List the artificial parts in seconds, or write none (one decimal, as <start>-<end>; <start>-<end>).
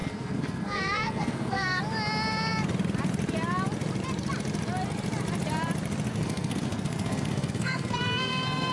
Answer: 0.0-1.8; 6.1-8.7